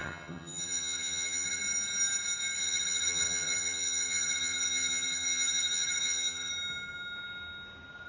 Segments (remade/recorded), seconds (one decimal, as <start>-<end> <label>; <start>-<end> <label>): 0.0-1.6 remade; 1.6-2.6 recorded; 2.6-6.5 remade; 6.5-8.1 recorded